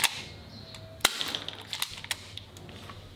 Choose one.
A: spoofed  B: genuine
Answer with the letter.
B